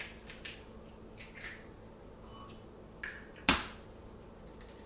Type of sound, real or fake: real